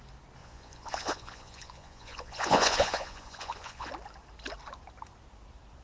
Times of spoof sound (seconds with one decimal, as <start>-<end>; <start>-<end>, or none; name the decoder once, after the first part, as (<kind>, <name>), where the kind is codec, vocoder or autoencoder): 0.4-3.9 (vocoder, Vocos)

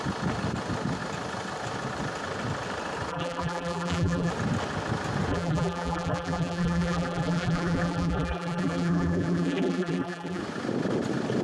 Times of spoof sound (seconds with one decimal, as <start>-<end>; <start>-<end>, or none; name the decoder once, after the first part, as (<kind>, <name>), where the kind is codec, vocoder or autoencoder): 3.1-4.3 (vocoder, BigVGAN v2); 5.3-10.4

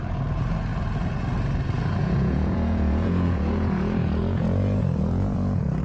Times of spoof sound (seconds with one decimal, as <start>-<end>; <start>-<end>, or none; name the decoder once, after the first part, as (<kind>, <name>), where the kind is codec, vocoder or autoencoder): 2.0-5.8 (vocoder, Vocos)